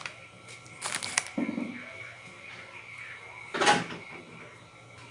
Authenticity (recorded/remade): recorded